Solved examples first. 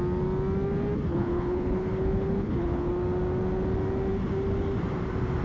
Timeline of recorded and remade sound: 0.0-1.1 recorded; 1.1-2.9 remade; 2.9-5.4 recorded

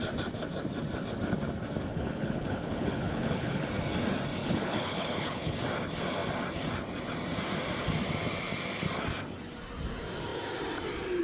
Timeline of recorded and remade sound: 0.0-1.9 recorded; 1.9-3.7 remade; 3.7-4.4 recorded; 4.4-5.5 remade; 5.5-11.2 recorded

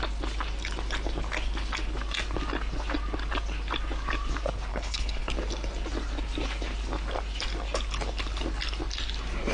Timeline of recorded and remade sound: 0.0-4.7 recorded; 4.7-5.3 remade; 5.3-9.5 recorded

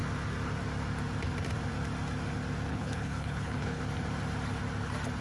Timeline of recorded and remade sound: 0.0-2.7 recorded; 2.7-3.8 remade; 3.8-5.2 recorded

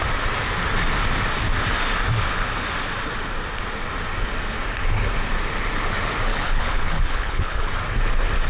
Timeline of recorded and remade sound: 0.0-6.3 recorded; 6.3-7.7 remade; 7.7-8.5 recorded